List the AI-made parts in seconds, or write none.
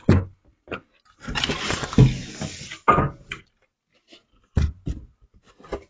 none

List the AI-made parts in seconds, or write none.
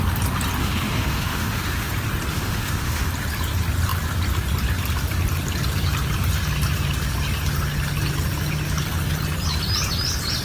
0.6-1.9; 2.3-3.1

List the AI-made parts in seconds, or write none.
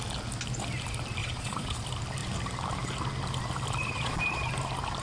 1.2-1.8; 3.9-4.5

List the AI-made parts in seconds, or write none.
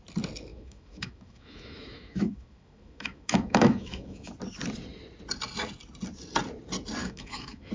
0.5-4.3; 7.0-7.7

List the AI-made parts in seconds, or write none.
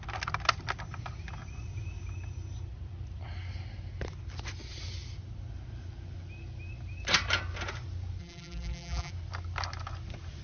8.2-9.1